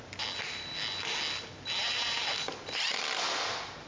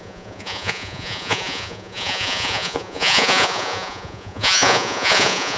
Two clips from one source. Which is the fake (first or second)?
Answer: second